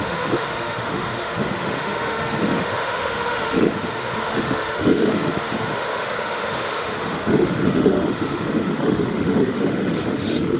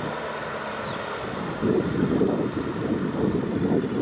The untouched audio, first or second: second